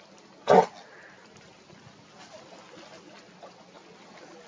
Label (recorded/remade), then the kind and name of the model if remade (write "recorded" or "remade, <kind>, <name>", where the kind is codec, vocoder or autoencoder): recorded